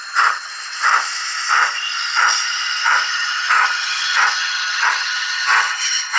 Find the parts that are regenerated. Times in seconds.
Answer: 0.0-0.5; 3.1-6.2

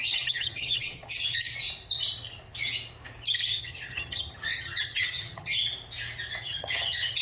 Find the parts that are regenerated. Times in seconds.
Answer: 0.0-1.5; 3.6-5.7; 6.4-7.2